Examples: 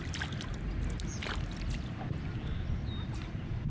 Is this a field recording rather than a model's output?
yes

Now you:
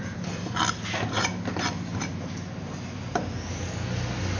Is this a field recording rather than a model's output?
yes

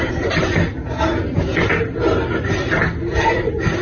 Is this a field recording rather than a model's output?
yes